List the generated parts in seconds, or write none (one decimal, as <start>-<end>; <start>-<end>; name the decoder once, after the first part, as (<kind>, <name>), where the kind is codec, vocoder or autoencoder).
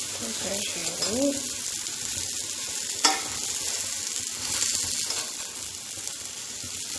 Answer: none